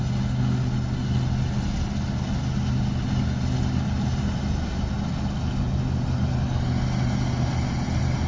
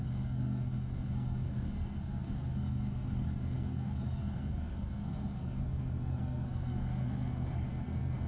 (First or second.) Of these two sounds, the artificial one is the second